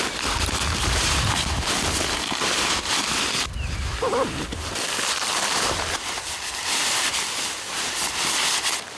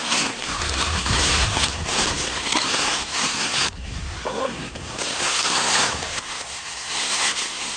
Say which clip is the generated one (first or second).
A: second